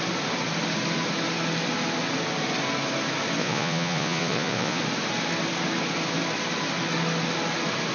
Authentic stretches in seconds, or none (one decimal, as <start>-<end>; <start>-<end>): 0.0-3.4; 4.8-7.9